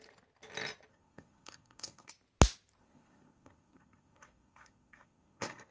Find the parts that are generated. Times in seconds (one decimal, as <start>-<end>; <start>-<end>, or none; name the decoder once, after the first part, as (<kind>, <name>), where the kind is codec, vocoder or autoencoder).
0.9-2.1 (codec, SNAC); 2.8-5.7

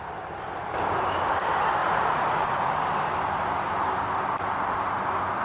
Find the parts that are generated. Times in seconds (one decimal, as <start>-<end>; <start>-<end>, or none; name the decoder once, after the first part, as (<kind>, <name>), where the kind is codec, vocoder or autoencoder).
1.8-2.7 (vocoder, Vocos)

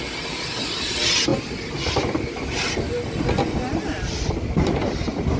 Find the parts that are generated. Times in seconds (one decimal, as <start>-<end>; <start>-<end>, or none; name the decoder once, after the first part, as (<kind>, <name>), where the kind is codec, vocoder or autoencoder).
none

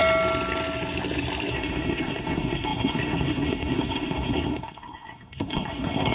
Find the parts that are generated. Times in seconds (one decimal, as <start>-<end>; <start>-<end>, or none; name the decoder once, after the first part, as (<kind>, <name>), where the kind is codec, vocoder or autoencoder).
1.5-6.1 (codec, SNAC)

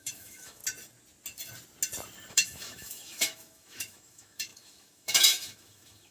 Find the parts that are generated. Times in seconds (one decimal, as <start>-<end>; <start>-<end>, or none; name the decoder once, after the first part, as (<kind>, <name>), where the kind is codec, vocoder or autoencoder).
0.0-0.6 (autoencoder, DAC-VAE); 2.3-6.1

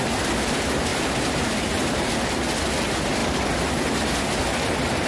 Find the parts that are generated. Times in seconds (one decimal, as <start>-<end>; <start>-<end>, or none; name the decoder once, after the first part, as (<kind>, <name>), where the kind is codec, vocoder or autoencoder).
0.9-2.1 (vocoder, BigVGAN v2)